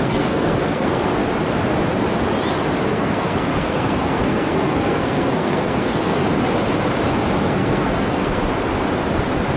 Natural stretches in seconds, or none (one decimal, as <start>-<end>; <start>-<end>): 1.2-2.9; 6.2-7.4; 8.4-9.6